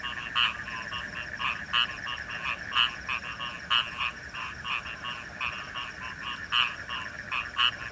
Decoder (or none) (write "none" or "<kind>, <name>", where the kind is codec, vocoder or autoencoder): none